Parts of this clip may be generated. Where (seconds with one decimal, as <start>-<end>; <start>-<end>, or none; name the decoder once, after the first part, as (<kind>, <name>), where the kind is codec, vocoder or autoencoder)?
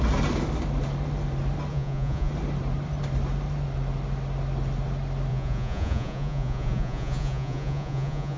1.7-2.3 (vocoder, Vocos); 5.3-8.4